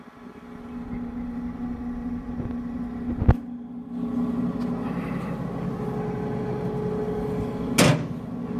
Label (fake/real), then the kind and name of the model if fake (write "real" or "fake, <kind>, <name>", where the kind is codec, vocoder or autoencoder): real